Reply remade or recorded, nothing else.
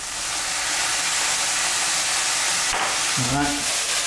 recorded